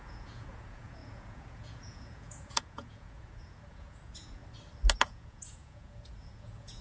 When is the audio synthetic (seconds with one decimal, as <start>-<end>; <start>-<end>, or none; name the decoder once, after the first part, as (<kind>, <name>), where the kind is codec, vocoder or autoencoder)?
0.0-4.4 (vocoder, Vocos); 5.0-6.8